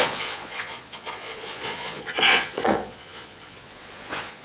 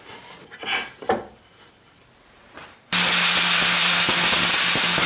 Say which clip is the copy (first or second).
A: first